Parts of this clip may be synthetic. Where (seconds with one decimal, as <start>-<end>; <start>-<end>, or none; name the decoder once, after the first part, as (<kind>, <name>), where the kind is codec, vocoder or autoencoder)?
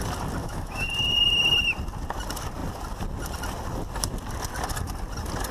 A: 0.4-0.9 (autoencoder, DAC-VAE)